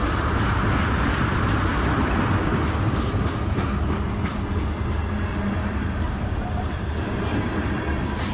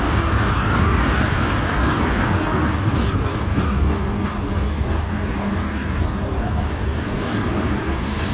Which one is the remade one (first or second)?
second